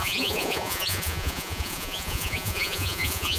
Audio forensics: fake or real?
fake